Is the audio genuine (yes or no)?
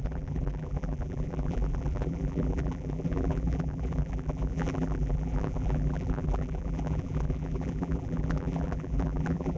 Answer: no